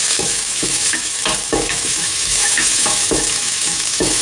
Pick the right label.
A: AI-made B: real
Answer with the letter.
A